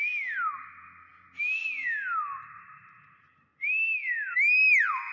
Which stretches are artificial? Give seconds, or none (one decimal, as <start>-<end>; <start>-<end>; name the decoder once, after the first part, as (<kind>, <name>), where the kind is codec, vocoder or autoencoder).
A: none